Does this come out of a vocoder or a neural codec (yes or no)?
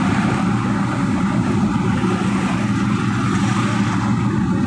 no